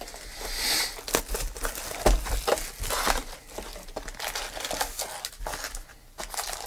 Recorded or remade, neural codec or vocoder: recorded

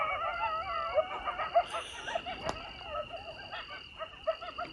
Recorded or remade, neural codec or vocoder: recorded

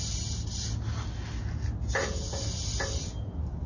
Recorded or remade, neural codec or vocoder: recorded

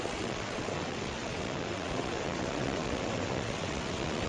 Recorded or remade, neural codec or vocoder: remade, vocoder, WaveNeXt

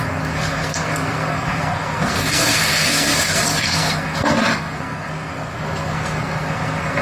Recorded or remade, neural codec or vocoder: remade, codec, SNAC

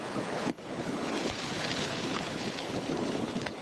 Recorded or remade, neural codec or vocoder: remade, codec, HILCodec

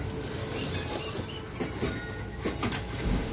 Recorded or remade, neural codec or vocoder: recorded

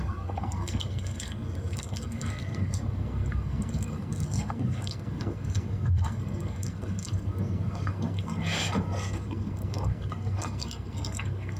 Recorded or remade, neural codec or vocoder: remade, codec, SNAC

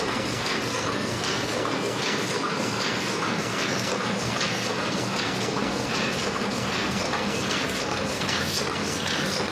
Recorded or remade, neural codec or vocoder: remade, codec, SNAC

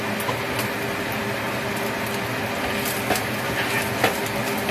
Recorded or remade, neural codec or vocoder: recorded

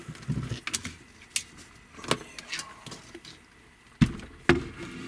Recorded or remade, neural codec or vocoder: recorded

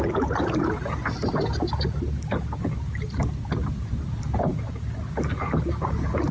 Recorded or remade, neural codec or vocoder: recorded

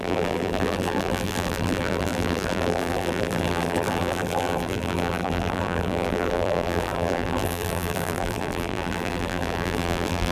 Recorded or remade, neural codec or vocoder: remade, vocoder, BigVGAN v2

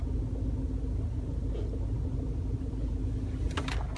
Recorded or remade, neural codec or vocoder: recorded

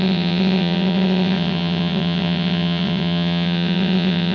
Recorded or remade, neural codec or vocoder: remade, vocoder, WaveNeXt